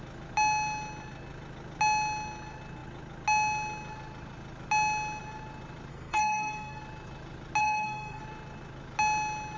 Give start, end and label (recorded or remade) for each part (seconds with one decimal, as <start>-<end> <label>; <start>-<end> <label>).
0.0-5.9 recorded; 5.9-6.8 remade; 6.8-7.6 recorded; 7.6-8.2 remade; 8.2-9.6 recorded